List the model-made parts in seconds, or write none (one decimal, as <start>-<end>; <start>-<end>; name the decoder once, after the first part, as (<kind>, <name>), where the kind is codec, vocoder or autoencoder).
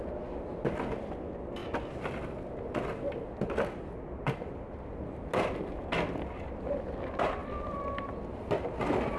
none